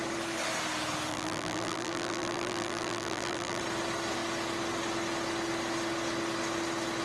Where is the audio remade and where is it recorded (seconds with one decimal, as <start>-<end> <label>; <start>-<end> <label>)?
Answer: 0.0-1.1 recorded; 1.1-3.6 remade; 3.6-7.0 recorded